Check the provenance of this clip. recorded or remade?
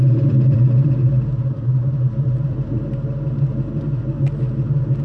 remade